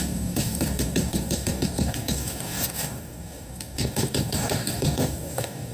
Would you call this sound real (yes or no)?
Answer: no